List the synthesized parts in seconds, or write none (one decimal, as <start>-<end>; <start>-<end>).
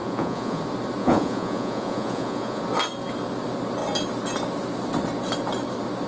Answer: 0.0-0.6; 1.0-2.6